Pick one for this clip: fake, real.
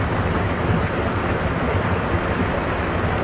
real